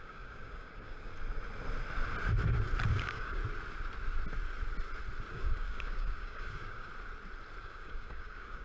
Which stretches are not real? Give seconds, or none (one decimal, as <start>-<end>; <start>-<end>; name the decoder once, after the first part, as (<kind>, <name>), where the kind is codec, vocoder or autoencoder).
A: 0.0-1.1 (codec, DAC); 2.9-3.4; 5.3-6.9; 7.6-8.6